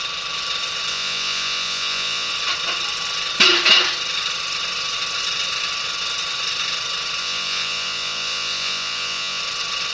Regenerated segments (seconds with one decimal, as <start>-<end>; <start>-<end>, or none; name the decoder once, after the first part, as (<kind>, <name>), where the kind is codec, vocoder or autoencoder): 0.9-2.3 (vocoder, Vocos); 7.2-9.4